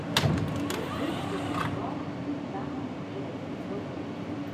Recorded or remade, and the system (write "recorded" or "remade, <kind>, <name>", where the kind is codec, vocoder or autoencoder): recorded